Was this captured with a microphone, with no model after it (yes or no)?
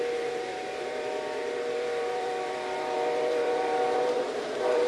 no